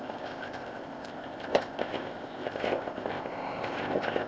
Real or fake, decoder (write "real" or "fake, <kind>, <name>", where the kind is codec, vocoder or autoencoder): fake, codec, ZipCodec